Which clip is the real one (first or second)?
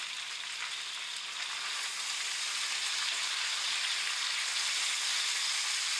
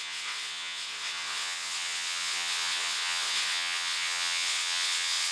first